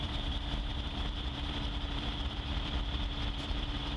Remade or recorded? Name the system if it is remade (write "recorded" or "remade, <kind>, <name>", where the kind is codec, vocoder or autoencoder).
remade, vocoder, BigVGAN v2